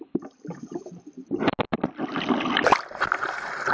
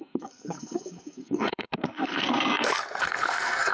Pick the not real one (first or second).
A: second